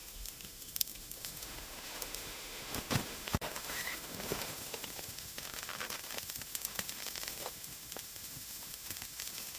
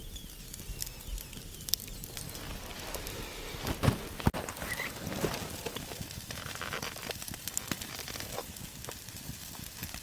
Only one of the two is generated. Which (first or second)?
first